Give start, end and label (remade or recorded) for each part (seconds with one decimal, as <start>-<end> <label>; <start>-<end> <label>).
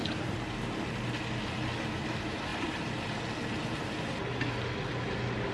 0.0-5.5 recorded